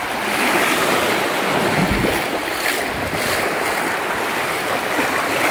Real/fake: real